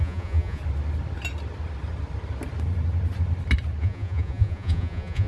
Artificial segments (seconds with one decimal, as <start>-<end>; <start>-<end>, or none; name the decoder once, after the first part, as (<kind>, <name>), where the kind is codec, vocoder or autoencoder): 0.0-0.6 (vocoder, Vocos); 3.8-5.3